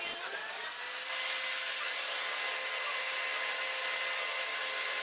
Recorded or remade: recorded